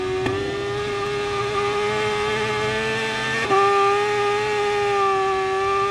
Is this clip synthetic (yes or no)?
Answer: no